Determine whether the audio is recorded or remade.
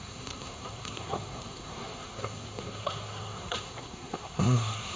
remade